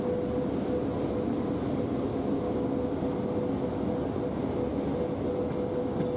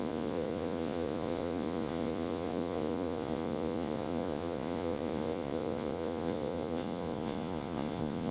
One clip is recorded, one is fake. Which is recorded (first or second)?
first